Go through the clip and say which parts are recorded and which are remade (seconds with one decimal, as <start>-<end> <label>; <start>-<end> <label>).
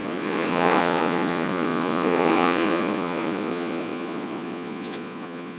0.0-5.6 remade